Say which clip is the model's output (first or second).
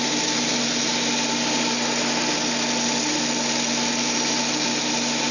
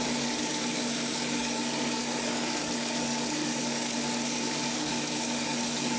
second